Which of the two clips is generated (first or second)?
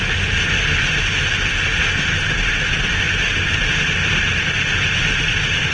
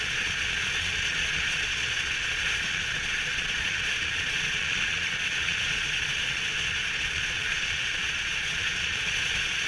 second